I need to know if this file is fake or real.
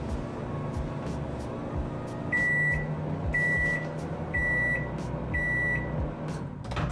real